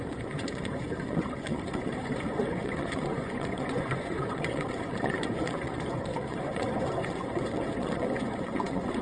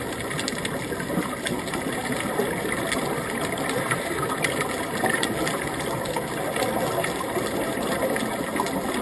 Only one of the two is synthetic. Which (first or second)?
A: first